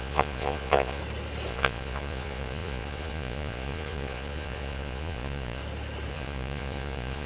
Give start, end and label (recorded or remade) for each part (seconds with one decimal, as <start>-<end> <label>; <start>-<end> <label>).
0.0-1.0 remade; 1.0-1.5 recorded; 1.5-5.6 remade; 5.6-6.1 recorded; 6.1-7.3 remade

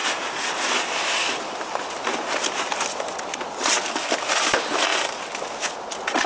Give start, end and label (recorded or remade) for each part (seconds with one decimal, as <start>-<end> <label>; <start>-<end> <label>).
0.0-6.3 recorded

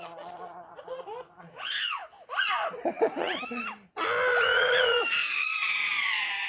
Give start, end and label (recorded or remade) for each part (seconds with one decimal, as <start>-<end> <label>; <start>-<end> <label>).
0.0-2.0 remade; 2.0-2.8 recorded; 2.8-3.6 remade; 3.6-4.4 recorded; 4.4-6.5 remade

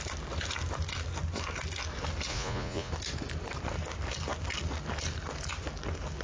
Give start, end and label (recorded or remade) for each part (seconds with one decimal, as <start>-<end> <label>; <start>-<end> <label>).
0.0-2.3 recorded; 2.3-2.9 remade; 2.9-6.2 recorded